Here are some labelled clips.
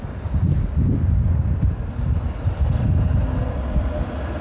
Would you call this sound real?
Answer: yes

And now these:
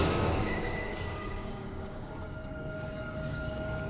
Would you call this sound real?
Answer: no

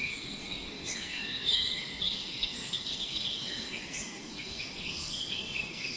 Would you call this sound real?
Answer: no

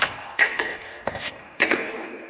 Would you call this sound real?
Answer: no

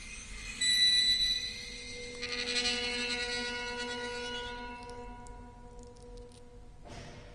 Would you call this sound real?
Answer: yes